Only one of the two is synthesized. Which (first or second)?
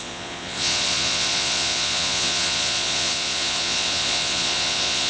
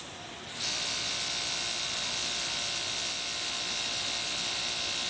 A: first